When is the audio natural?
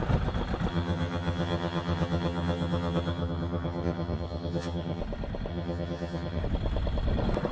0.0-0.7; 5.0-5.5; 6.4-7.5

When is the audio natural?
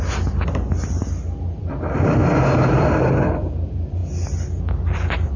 2.2-2.7; 4.0-4.6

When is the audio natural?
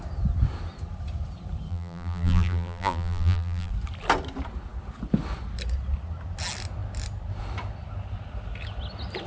0.0-1.7; 3.7-9.3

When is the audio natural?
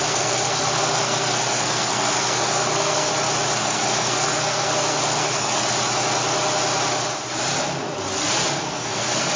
3.1-3.6; 5.6-8.6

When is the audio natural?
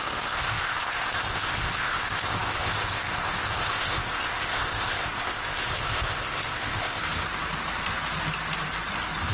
7.0-9.3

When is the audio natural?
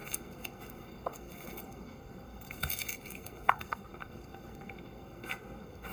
none